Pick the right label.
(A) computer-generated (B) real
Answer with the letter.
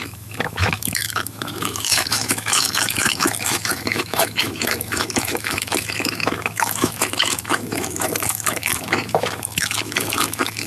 A